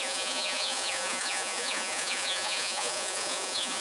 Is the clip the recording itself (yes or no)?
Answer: no